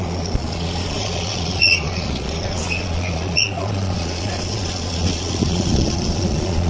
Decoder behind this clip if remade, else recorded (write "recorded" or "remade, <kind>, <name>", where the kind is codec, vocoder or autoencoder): remade, vocoder, Vocos